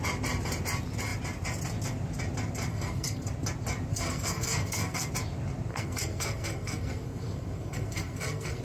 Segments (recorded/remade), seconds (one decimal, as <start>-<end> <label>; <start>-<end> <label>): 0.0-2.7 recorded; 2.7-3.3 remade; 3.3-3.9 recorded; 3.9-5.1 remade; 5.1-5.7 recorded; 5.7-8.6 remade